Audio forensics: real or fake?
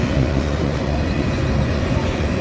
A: fake